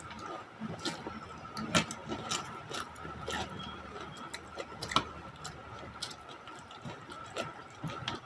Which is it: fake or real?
real